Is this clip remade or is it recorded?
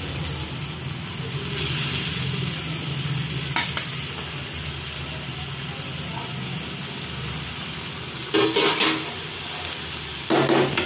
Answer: recorded